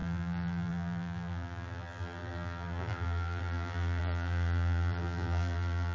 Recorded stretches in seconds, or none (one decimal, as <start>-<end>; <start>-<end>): none